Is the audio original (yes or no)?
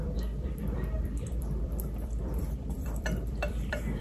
no